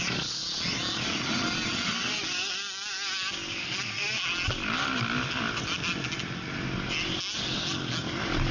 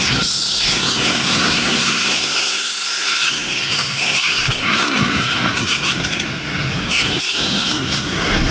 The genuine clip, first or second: first